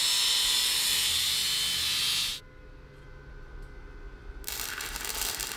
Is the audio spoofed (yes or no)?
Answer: no